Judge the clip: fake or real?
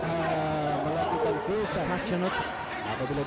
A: real